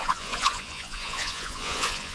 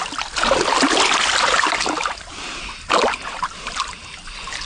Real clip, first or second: second